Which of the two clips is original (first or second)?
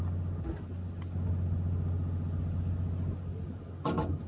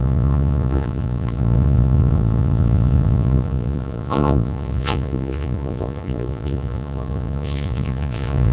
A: first